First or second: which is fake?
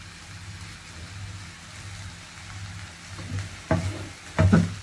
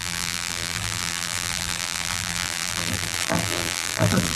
second